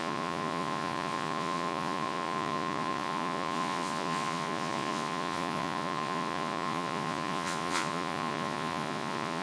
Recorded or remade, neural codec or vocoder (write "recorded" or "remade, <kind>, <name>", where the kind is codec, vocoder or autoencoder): remade, vocoder, Vocos